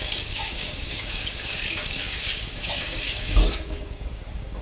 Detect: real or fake fake